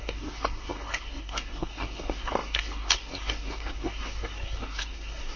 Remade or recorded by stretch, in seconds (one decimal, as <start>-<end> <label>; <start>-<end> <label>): 0.0-5.4 remade